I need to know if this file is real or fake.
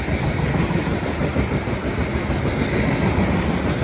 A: real